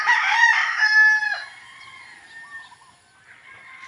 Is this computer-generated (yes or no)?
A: no